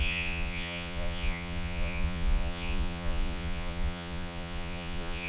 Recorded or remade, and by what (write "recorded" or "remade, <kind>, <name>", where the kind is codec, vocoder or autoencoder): remade, vocoder, Vocos